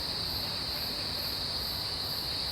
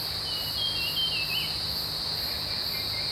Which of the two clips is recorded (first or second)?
second